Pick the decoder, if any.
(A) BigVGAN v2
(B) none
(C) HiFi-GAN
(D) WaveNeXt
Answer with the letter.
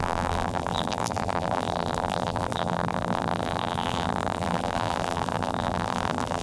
A